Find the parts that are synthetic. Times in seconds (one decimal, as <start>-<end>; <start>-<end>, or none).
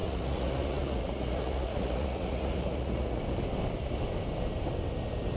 0.0-3.2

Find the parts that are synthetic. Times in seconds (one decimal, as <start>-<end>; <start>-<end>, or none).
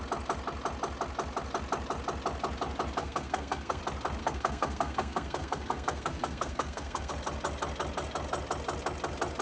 3.0-3.8; 4.2-7.1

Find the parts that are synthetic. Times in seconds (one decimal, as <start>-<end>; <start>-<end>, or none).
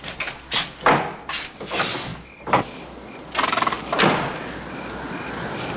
none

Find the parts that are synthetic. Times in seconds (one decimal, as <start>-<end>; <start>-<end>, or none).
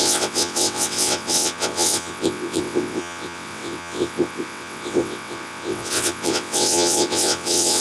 0.0-7.8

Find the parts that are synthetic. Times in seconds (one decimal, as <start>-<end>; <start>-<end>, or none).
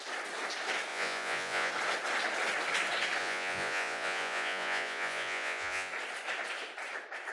0.9-1.7; 3.2-5.9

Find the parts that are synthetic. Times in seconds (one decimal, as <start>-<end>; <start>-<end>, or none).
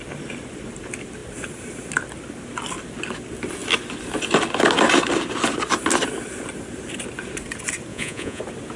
7.9-8.4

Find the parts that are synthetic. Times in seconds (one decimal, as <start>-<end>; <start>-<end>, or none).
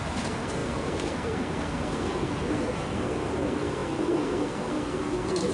0.0-5.5